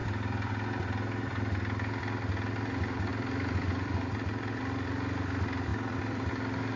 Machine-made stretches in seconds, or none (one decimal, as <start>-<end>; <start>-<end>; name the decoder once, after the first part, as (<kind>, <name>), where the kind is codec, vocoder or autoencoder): 0.0-0.5 (vocoder, BigVGAN v2); 3.1-4.6; 5.7-6.3